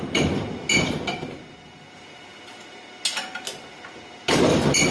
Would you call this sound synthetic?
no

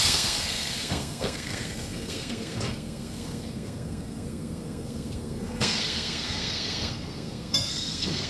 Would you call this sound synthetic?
yes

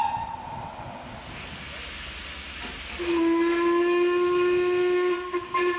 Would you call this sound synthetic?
no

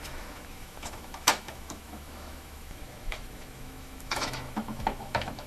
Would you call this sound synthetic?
yes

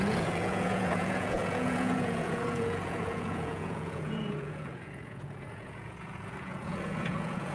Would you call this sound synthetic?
yes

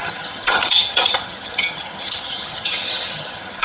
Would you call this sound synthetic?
yes